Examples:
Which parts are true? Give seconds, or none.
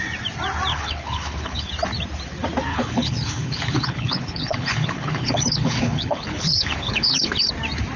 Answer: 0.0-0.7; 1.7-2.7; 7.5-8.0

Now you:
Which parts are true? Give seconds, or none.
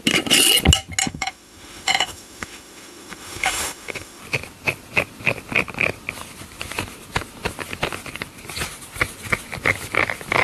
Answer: 0.0-1.0; 4.2-10.4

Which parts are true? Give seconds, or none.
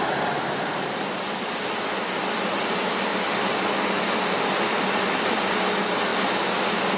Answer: 0.0-7.0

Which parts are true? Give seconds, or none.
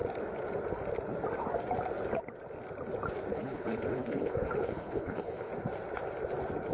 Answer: 0.0-3.3; 5.5-6.7